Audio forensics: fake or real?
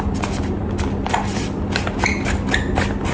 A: real